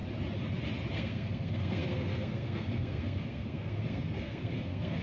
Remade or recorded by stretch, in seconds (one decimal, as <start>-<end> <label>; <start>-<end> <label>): 0.0-0.9 recorded; 0.9-5.0 remade